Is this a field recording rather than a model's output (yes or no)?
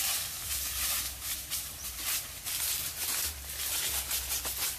yes